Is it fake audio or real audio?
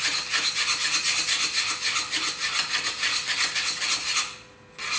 real